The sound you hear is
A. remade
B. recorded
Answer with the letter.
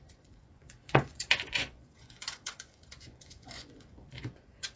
A